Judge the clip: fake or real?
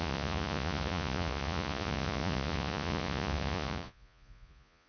fake